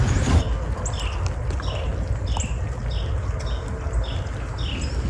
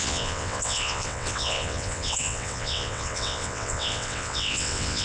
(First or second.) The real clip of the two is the first